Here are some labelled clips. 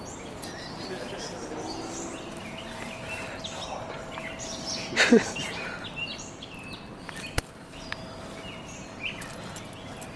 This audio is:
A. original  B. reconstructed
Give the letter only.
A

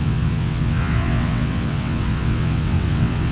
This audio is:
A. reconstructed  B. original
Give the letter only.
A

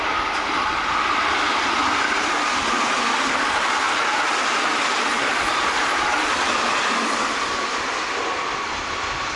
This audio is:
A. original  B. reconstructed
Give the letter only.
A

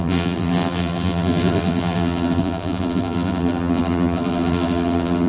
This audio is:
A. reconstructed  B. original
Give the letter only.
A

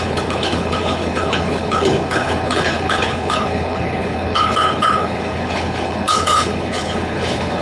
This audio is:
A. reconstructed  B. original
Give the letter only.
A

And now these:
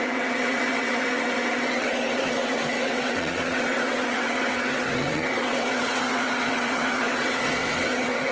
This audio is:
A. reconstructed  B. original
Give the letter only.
A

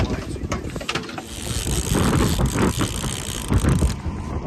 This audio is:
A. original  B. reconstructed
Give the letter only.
A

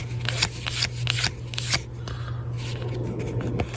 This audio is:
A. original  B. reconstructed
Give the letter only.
A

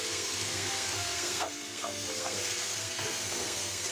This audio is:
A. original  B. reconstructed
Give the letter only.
B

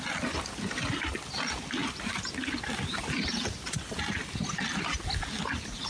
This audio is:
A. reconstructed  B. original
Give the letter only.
A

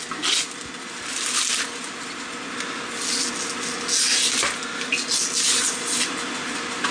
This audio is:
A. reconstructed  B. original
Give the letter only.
B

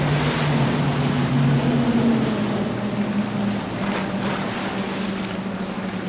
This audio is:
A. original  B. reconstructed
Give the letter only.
A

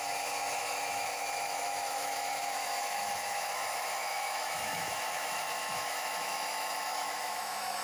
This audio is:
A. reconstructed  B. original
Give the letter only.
A